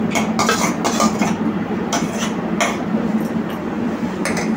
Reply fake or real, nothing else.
real